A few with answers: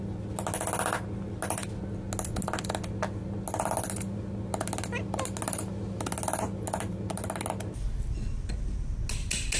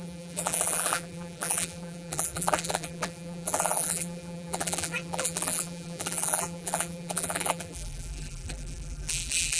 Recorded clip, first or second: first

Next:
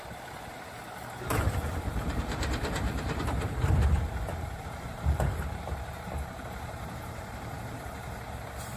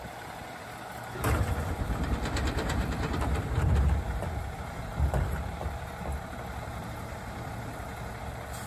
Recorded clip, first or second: second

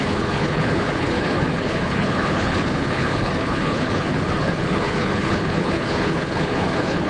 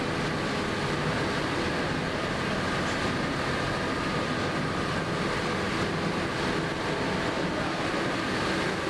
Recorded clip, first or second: second